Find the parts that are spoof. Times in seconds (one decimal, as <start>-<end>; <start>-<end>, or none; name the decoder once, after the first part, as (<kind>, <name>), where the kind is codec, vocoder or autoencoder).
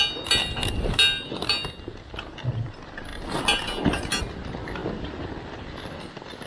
none